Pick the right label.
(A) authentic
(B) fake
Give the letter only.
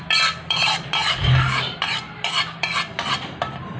B